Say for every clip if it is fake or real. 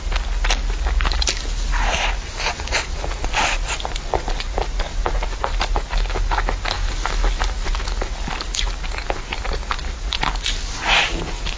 real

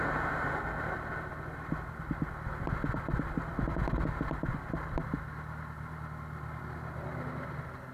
real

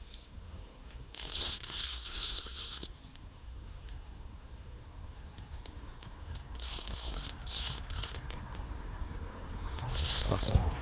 fake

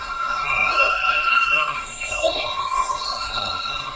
fake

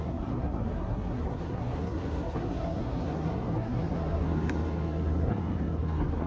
fake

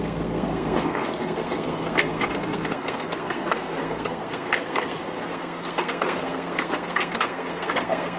fake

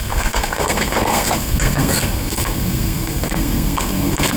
fake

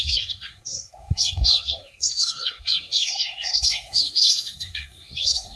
fake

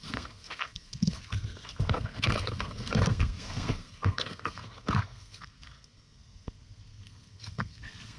fake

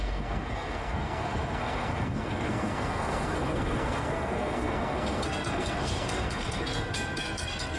fake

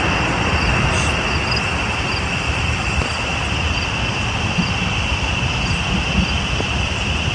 real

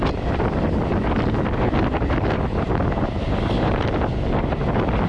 real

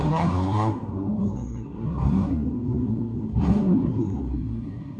fake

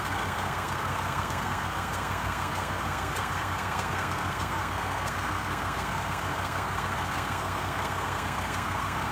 fake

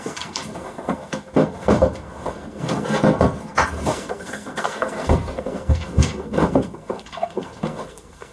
fake